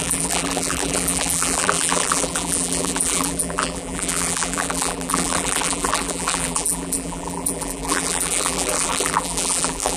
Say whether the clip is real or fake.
fake